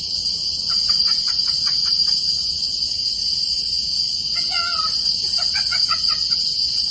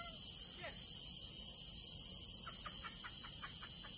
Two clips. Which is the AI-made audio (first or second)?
first